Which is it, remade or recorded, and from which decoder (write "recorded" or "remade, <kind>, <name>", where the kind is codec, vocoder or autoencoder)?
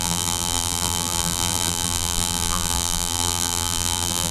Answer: remade, vocoder, BigVGAN v2